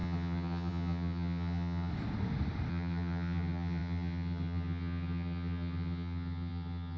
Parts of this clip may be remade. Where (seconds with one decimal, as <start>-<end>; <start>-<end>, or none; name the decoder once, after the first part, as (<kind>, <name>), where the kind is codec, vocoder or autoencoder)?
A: 0.0-1.9 (vocoder, HiFi-GAN); 2.7-7.0